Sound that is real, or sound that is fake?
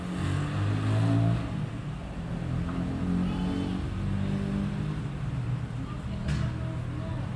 real